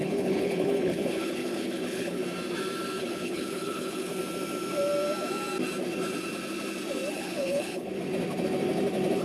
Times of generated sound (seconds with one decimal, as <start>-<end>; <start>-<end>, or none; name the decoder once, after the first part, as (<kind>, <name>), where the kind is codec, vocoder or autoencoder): 0.0-2.2 (codec, HILCodec); 3.0-4.1; 7.1-7.9